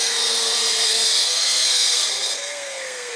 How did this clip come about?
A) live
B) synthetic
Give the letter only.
B